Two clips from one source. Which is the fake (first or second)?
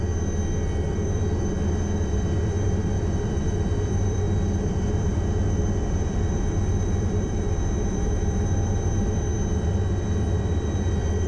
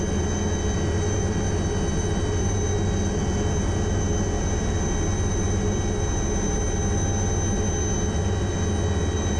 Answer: first